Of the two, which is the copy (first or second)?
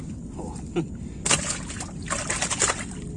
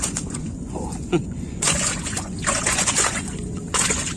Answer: second